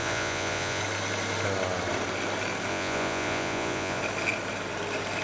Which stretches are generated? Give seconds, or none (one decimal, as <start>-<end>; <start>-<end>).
0.0-0.8; 2.7-4.0